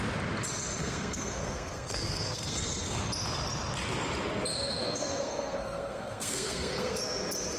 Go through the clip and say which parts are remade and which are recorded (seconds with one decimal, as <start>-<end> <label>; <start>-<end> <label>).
0.0-0.8 recorded; 0.8-3.0 remade; 3.0-4.5 recorded; 4.5-7.0 remade; 7.0-7.6 recorded